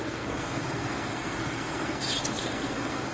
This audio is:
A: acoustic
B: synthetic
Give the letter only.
B